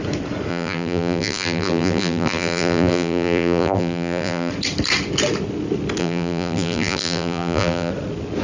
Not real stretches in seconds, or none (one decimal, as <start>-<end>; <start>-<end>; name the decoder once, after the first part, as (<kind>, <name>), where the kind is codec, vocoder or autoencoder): 0.5-4.5 (vocoder, BigVGAN v2); 6.0-7.9